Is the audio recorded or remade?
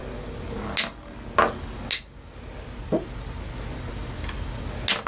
recorded